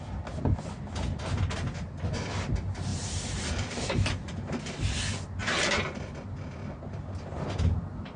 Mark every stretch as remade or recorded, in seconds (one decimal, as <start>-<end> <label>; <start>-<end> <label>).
0.0-2.9 recorded; 2.9-4.5 remade; 4.5-5.4 recorded; 5.4-6.0 remade; 6.0-8.2 recorded